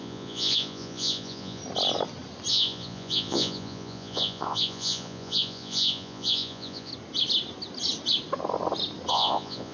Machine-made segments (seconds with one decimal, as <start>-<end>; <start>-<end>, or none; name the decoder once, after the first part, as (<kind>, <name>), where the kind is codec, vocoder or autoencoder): 0.0-1.6 (vocoder, Vocos); 2.5-6.9; 9.1-9.7